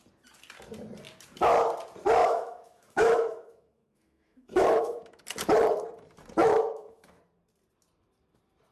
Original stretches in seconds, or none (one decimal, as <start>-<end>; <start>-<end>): 0.0-2.2; 5.2-6.4; 7.2-8.7